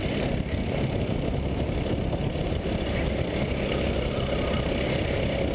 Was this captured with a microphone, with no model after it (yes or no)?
yes